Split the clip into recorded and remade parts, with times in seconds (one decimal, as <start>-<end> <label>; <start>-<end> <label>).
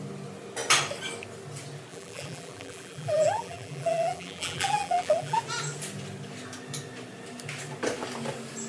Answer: 0.0-1.9 recorded; 1.9-5.4 remade; 5.4-8.7 recorded